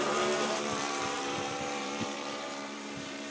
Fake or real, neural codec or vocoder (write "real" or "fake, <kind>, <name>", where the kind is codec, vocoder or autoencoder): fake, vocoder, BigVGAN v2